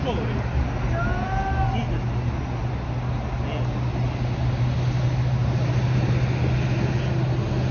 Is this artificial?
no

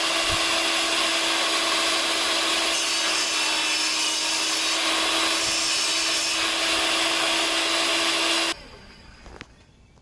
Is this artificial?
no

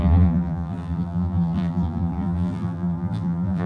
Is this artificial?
yes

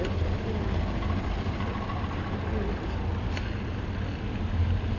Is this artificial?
no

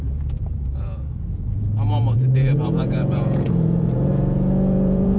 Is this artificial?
yes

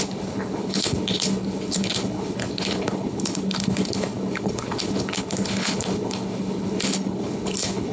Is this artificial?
yes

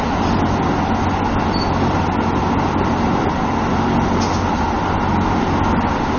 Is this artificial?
no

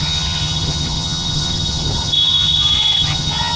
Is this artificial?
yes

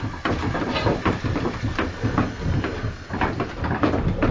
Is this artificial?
no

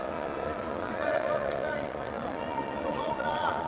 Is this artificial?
yes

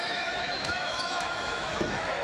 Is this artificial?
yes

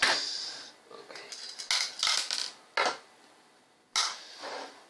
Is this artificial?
no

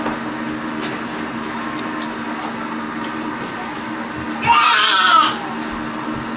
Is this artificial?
no